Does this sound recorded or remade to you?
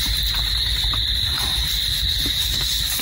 recorded